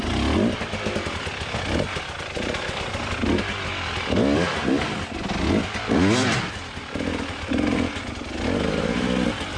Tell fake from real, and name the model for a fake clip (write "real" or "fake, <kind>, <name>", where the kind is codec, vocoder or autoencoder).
real